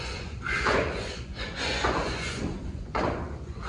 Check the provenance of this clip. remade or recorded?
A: remade